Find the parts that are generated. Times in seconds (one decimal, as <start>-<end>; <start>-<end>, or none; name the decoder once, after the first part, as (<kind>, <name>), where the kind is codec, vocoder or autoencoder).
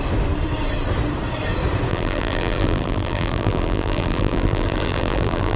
1.9-5.6 (vocoder, BigVGAN v2)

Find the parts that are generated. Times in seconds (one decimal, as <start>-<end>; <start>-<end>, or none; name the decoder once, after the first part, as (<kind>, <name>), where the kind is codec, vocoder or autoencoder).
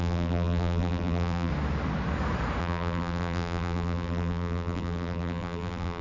0.0-1.5 (vocoder, BigVGAN v2); 2.6-6.0